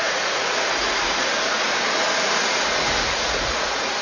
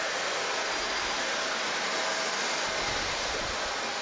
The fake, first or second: first